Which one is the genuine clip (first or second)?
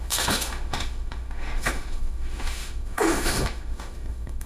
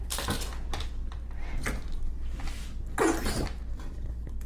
second